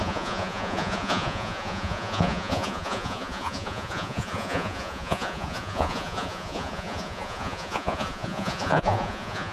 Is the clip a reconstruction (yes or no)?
yes